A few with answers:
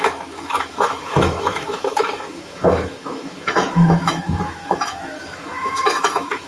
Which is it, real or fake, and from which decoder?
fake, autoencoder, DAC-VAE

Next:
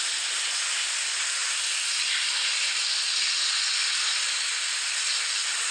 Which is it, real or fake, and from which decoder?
real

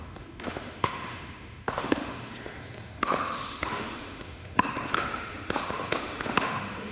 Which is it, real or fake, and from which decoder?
fake, autoencoder, DAC-VAE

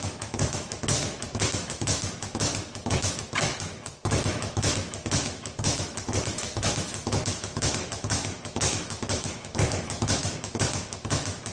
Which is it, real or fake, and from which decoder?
fake, autoencoder, DAC-VAE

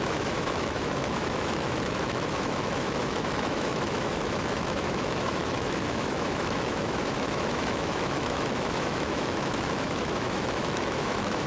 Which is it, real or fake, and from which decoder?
fake, autoencoder, DAC-VAE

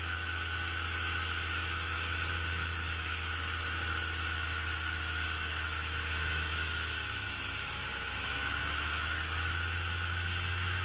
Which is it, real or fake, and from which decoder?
fake, autoencoder, DAC-VAE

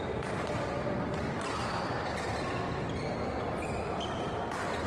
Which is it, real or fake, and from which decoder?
real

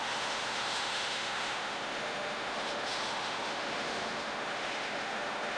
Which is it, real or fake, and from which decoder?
fake, autoencoder, DAC-VAE